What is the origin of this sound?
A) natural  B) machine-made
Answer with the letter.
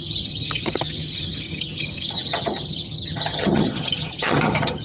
B